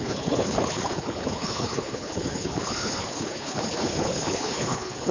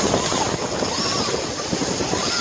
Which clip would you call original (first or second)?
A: second